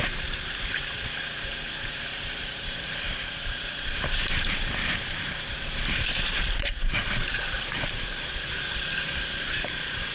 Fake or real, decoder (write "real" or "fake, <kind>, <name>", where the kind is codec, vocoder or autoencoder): fake, vocoder, BigVGAN v2